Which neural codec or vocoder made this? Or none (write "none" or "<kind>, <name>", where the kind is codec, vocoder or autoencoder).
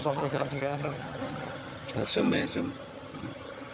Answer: vocoder, HiFi-GAN